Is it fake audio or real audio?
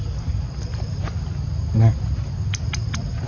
real